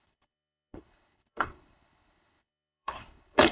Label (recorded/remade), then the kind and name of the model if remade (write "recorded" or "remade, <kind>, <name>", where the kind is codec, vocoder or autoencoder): remade, codec, HILCodec